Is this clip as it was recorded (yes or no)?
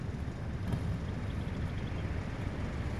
yes